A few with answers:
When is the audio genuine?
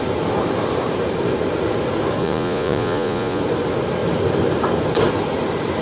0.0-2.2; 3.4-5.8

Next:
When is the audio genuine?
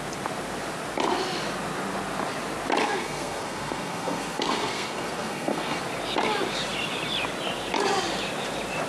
0.0-2.8; 5.8-8.9